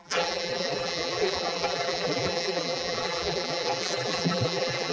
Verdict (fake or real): fake